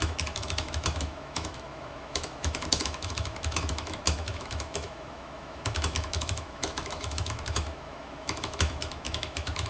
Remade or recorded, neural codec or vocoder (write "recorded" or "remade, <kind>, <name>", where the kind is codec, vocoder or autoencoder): remade, autoencoder, DAC-VAE